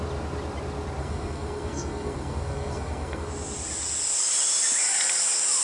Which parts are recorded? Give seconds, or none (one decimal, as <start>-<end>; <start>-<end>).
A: 0.0-1.0; 3.3-5.6